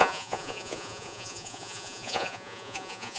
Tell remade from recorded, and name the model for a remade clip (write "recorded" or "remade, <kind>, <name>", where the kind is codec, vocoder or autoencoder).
remade, vocoder, Vocos